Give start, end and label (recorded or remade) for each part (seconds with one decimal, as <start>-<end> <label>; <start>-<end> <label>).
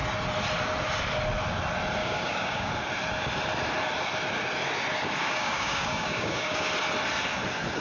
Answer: 0.0-2.0 recorded; 2.0-2.7 remade; 2.7-5.2 recorded; 5.2-6.7 remade; 6.7-7.8 recorded